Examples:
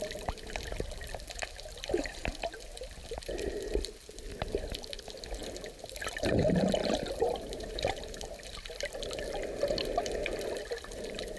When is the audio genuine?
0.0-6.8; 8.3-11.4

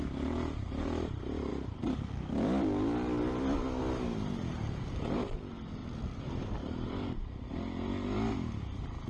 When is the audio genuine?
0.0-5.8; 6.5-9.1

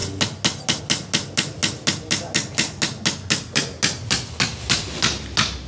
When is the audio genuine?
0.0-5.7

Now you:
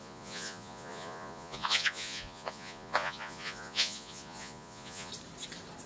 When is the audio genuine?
5.1-5.9

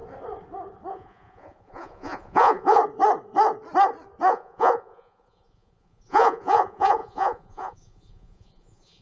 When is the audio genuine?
0.0-0.9; 2.8-4.3

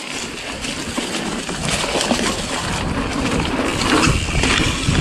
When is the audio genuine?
0.0-5.0

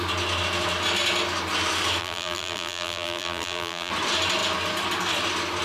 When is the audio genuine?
0.0-2.0; 3.9-5.6